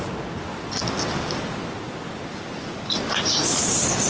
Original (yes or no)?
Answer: yes